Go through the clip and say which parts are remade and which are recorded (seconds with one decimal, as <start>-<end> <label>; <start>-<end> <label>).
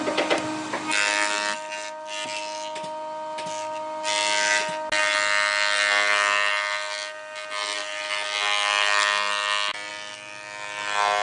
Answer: 0.0-11.2 recorded